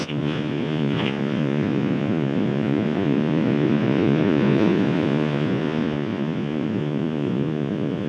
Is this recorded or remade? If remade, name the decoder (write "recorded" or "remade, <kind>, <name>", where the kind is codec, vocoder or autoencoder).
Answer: remade, vocoder, Vocos